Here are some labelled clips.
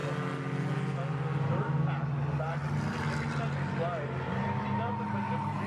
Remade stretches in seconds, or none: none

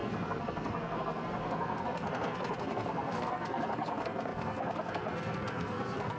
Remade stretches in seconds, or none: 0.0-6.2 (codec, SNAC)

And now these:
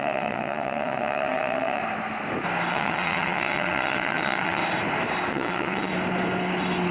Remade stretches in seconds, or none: 0.0-1.8 (vocoder, WaveNeXt); 2.7-4.6; 5.3-5.9

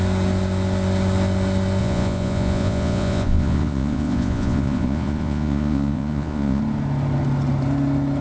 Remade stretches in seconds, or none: 1.8-6.6 (vocoder, Vocos)

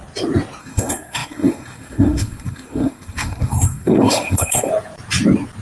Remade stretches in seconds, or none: 0.6-4.7 (codec, SNAC)

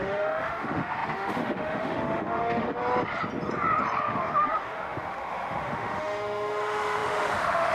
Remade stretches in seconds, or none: 0.0-2.8 (autoencoder, DAC-VAE); 4.1-7.7